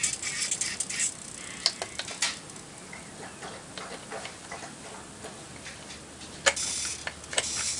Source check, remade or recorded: recorded